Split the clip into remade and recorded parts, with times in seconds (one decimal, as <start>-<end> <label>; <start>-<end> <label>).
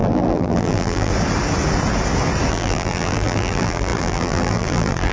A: 0.0-1.1 remade; 1.1-2.5 recorded; 2.5-5.1 remade